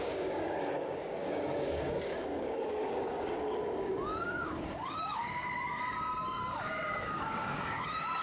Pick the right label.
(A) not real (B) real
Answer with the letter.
A